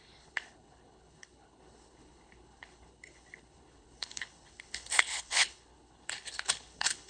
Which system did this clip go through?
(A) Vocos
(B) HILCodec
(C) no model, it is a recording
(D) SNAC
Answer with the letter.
B